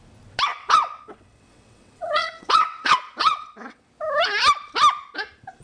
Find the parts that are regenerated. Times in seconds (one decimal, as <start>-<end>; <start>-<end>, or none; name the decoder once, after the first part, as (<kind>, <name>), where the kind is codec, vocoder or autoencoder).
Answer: 0.5-3.8 (vocoder, WaveNeXt)

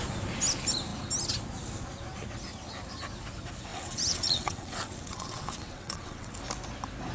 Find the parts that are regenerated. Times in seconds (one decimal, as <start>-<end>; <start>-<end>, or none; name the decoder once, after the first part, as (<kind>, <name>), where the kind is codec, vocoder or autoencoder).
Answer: 3.7-6.3 (vocoder, WaveNeXt)

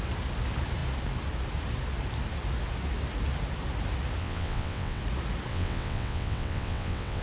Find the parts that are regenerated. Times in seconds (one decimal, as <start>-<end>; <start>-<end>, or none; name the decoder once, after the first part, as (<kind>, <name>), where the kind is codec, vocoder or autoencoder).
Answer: 4.2-5.0 (vocoder, WaveNeXt); 5.5-7.2